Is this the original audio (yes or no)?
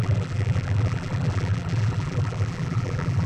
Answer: no